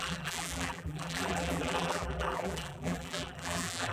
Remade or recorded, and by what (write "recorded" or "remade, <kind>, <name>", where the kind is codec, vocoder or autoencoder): remade, vocoder, BigVGAN v2